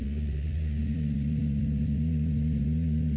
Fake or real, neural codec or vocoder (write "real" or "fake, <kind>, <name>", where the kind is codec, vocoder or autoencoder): fake, vocoder, Vocos